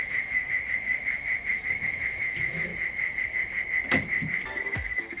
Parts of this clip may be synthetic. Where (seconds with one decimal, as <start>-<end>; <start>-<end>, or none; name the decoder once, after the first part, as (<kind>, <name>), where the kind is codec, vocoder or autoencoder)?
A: 0.0-2.7 (autoencoder, DAC-VAE); 4.6-5.2